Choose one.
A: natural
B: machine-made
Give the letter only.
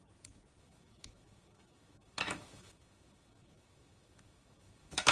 B